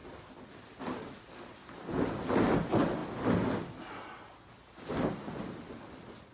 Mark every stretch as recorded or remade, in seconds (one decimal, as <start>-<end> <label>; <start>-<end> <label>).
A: 0.0-6.3 recorded

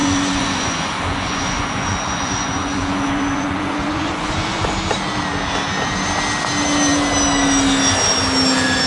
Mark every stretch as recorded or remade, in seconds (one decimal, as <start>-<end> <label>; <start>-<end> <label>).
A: 0.0-4.7 remade; 4.7-8.9 recorded

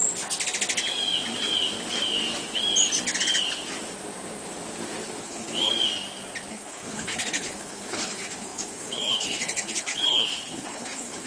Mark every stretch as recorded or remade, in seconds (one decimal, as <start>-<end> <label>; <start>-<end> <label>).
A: 0.0-5.2 recorded; 5.2-5.7 remade; 5.7-6.5 recorded; 6.5-11.3 remade

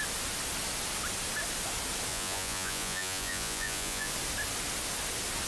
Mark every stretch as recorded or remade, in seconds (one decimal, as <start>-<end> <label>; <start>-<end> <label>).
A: 0.0-2.1 recorded; 2.1-4.1 remade; 4.1-5.5 recorded

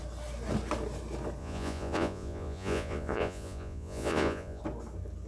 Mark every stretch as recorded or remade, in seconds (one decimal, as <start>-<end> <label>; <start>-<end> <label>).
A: 0.0-1.4 recorded; 1.4-4.6 remade; 4.6-5.3 recorded

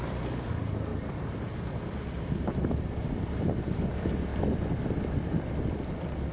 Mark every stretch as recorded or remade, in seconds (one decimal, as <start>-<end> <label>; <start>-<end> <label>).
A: 0.0-4.3 remade; 4.3-6.3 recorded

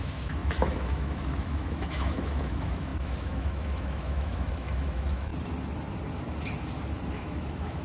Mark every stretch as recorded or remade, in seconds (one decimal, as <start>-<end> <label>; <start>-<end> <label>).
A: 0.0-5.3 remade; 5.3-7.1 recorded; 7.1-7.8 remade

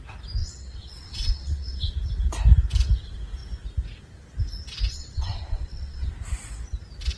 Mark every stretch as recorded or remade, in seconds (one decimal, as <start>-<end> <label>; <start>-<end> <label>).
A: 0.0-0.4 recorded; 0.4-1.9 remade; 1.9-4.9 recorded; 4.9-6.1 remade; 6.1-7.2 recorded